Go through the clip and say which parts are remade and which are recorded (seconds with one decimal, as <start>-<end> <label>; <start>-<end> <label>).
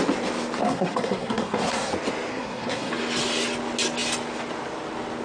0.0-0.6 recorded; 0.6-1.9 remade; 1.9-2.3 recorded; 2.3-2.9 remade; 2.9-5.2 recorded